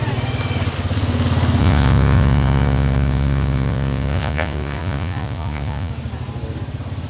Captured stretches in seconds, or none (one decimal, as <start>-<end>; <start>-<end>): 0.0-1.6; 5.9-7.1